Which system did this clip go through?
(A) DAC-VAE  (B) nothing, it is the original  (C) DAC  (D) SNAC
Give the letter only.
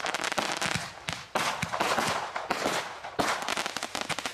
B